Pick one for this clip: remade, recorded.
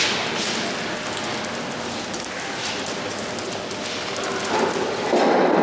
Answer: recorded